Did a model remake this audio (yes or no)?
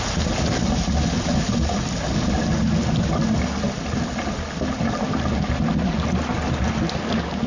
no